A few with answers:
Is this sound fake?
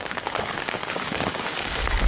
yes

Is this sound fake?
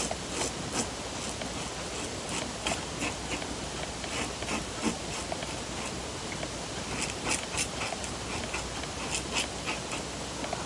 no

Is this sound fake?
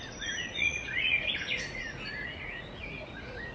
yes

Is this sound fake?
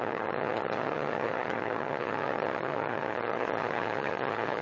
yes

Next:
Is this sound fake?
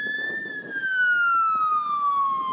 no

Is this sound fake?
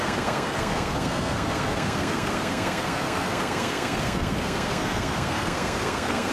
yes